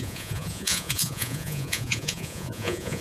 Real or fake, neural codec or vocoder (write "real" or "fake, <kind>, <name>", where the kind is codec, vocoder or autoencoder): fake, vocoder, Vocos